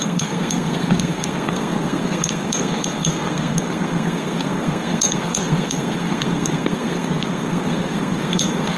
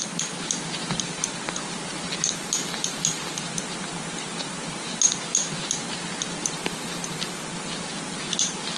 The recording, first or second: second